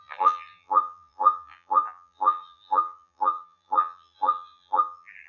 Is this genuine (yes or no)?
no